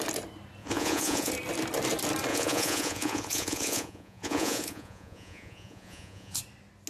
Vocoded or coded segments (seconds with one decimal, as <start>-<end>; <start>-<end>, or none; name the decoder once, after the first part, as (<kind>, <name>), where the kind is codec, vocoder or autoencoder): 0.6-1.3 (vocoder, Vocos); 2.3-6.4